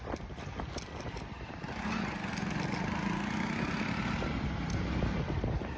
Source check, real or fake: real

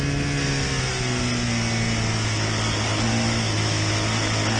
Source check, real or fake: real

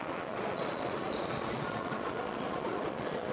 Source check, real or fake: fake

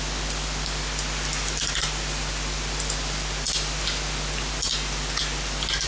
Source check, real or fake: real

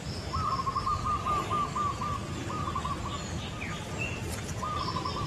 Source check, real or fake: real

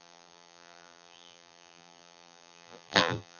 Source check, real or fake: fake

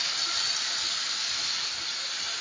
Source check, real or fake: real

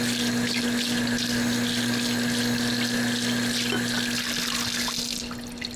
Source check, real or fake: real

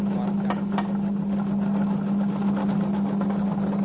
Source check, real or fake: real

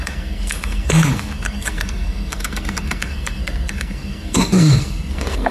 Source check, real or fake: fake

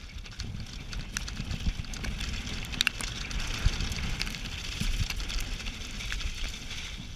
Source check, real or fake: real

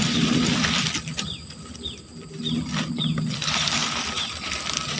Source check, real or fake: real